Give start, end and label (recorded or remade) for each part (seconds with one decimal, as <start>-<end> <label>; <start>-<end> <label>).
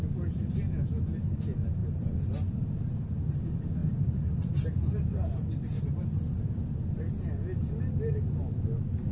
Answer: 0.0-1.8 recorded; 1.8-3.4 remade; 3.4-3.8 recorded; 3.8-7.0 remade; 7.0-9.1 recorded